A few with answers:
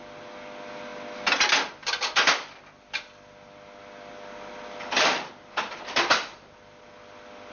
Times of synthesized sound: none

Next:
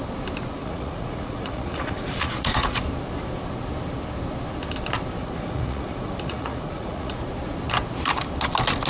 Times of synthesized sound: 0.6-2.8 (vocoder, Vocos); 5.2-7.2

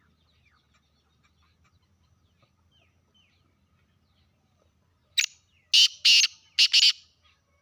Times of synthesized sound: none

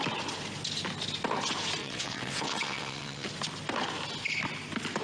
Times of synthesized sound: 1.8-3.3 (vocoder, WaveNeXt)

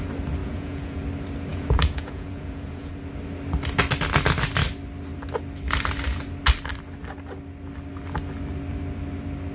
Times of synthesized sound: 0.4-1.0 (vocoder, Vocos); 1.5-2.9

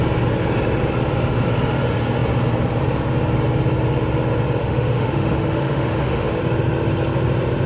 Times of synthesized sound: 4.6-6.4 (autoencoder, DAC-VAE)